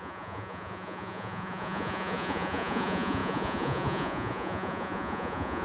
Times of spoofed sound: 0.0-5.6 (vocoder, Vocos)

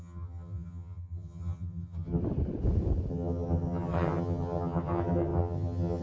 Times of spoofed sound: 0.0-2.2 (vocoder, HiFi-GAN); 3.1-6.0

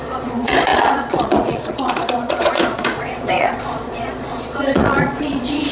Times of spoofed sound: 0.0-5.7 (vocoder, Vocos)

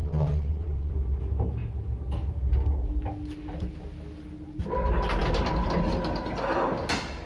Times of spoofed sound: 0.0-0.9 (vocoder, WaveNeXt)